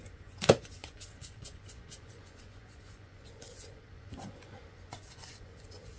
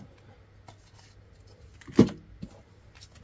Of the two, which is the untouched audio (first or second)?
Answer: second